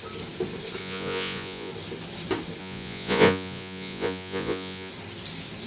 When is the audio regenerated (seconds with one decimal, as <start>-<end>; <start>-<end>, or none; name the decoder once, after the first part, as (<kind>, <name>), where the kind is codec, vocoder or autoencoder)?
0.8-1.7 (vocoder, Vocos); 2.6-4.9